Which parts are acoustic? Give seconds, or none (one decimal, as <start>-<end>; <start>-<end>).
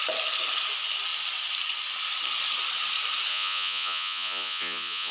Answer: 0.0-3.3